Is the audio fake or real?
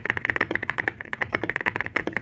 fake